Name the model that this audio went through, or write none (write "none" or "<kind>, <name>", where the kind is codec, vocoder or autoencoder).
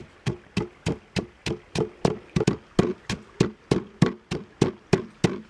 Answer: none